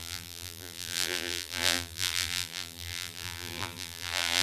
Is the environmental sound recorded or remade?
remade